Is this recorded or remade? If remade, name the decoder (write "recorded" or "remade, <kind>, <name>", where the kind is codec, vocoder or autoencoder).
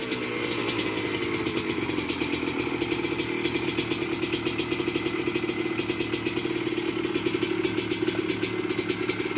recorded